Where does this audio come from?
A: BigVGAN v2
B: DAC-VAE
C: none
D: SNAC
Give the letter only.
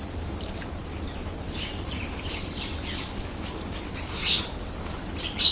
A